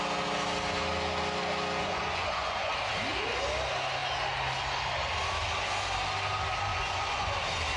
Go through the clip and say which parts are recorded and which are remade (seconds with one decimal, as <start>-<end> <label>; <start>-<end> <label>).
0.0-1.8 recorded; 1.8-2.7 remade; 2.7-6.7 recorded; 6.7-7.3 remade; 7.3-7.8 recorded